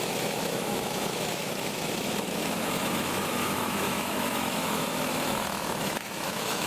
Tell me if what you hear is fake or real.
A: fake